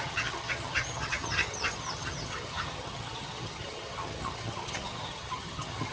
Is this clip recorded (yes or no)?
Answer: no